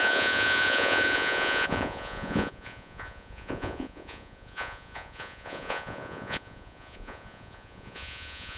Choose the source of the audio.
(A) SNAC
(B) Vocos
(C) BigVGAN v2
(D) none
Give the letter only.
B